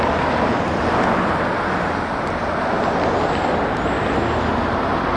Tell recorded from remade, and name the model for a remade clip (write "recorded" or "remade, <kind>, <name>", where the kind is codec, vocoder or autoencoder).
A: recorded